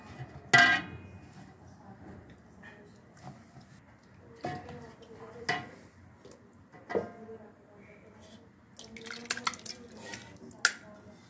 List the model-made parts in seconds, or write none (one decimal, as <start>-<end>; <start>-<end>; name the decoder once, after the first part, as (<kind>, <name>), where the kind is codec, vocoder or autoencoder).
none